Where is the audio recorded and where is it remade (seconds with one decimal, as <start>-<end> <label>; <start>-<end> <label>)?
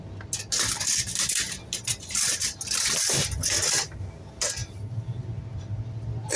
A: 0.0-6.4 recorded